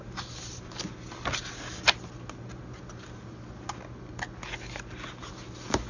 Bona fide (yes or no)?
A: yes